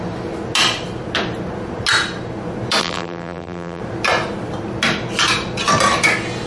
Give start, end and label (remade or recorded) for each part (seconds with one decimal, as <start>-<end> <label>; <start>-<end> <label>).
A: 0.0-2.8 recorded; 2.8-3.8 remade; 3.8-6.5 recorded